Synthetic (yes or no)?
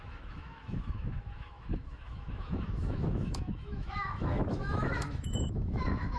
yes